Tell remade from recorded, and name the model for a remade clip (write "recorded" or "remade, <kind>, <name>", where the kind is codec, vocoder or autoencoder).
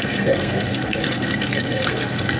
remade, codec, SNAC